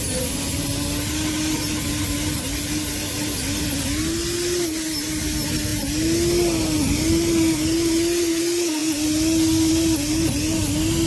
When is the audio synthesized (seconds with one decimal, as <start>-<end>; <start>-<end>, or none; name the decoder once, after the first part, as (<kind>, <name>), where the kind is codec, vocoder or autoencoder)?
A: none